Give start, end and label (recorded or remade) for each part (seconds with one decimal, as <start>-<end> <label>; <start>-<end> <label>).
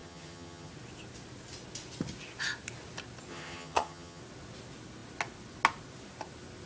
0.0-0.7 remade; 0.7-3.3 recorded; 3.3-4.2 remade; 4.2-6.7 recorded